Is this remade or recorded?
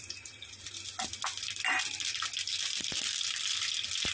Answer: recorded